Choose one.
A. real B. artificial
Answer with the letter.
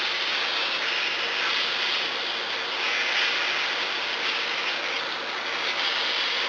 A